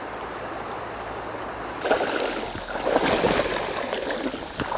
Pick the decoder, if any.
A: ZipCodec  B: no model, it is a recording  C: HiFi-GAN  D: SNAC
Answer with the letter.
B